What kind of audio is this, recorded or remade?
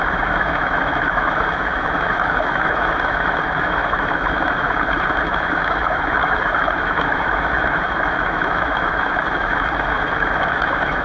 remade